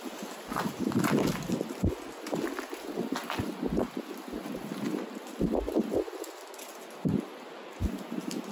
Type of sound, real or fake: real